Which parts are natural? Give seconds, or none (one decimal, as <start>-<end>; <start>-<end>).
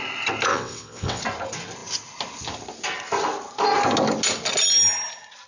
0.0-0.5; 1.2-5.5